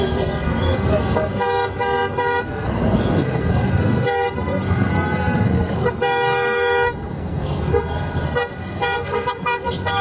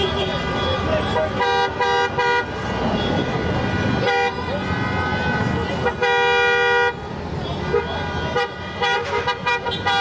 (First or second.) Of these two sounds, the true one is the second